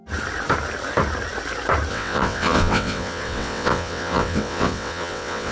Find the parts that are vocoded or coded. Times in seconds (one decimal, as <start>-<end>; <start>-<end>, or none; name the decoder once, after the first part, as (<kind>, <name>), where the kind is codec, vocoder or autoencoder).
1.9-5.5 (vocoder, WaveNeXt)